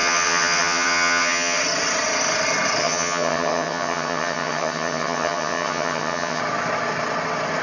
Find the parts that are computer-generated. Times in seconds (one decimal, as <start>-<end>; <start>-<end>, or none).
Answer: 0.0-1.6; 2.8-6.4